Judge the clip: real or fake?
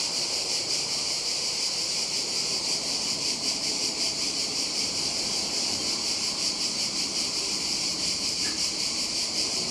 fake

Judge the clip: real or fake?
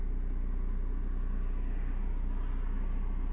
real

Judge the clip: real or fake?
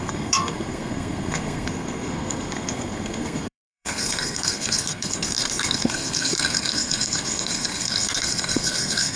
fake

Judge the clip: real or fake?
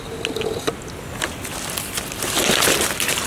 real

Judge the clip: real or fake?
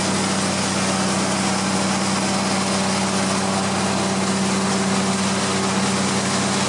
real